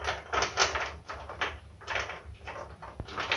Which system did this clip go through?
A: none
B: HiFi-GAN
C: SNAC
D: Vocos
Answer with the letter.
A